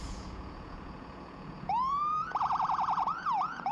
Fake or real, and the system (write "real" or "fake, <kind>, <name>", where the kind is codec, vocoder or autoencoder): fake, vocoder, Vocos